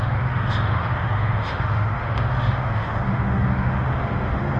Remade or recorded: remade